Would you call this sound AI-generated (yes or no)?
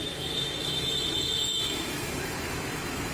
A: yes